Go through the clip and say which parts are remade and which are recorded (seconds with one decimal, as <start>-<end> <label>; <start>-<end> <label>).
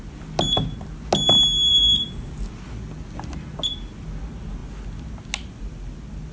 0.0-1.7 recorded; 1.7-2.5 remade; 2.5-6.3 recorded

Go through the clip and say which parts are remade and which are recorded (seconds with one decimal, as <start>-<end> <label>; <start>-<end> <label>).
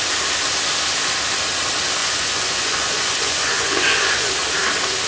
0.0-2.0 recorded; 2.0-4.3 remade; 4.3-5.1 recorded